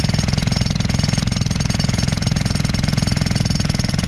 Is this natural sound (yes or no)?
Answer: no